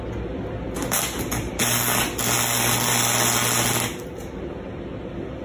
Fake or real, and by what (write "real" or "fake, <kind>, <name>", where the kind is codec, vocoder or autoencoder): real